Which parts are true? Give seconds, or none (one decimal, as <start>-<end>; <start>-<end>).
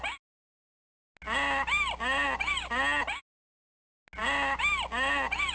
0.0-5.5